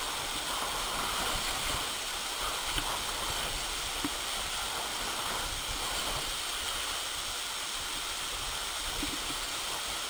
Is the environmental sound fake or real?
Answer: real